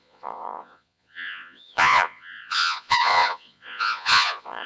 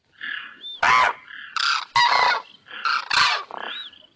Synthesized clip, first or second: first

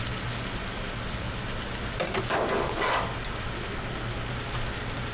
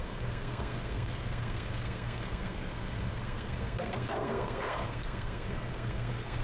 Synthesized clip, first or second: second